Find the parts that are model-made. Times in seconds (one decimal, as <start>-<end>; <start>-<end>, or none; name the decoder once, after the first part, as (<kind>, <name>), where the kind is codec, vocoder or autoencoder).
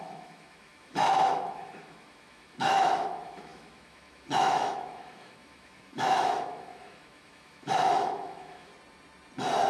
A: 0.0-8.7 (autoencoder, DAC-VAE)